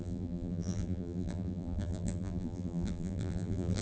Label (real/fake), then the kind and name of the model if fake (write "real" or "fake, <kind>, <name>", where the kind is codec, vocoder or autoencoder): fake, vocoder, BigVGAN v2